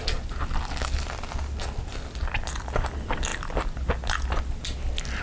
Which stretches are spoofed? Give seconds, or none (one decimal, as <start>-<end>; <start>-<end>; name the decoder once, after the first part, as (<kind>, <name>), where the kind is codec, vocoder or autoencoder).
none